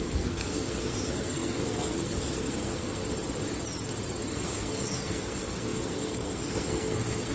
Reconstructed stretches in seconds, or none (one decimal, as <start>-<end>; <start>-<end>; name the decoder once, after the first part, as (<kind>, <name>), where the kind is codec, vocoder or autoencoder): 0.0-3.0 (codec, SNAC); 4.3-7.3